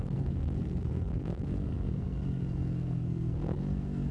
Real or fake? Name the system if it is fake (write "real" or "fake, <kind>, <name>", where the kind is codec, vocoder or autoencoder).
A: fake, codec, SNAC